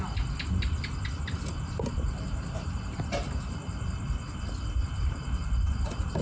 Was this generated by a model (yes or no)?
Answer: no